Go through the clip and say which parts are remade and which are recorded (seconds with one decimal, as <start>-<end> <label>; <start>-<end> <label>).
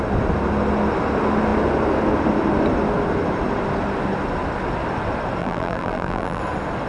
0.0-5.4 recorded; 5.4-6.4 remade; 6.4-6.9 recorded